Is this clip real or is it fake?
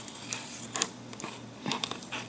fake